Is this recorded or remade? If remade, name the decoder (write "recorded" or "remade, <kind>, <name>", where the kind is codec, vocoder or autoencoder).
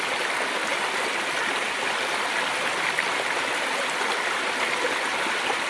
recorded